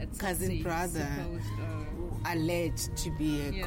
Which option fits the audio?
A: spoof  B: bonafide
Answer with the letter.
B